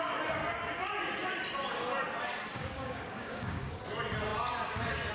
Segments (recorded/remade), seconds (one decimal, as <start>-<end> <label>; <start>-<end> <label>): 0.0-2.5 recorded; 2.5-3.8 remade; 3.8-5.1 recorded